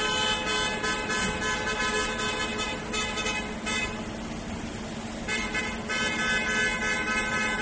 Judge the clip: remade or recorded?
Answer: recorded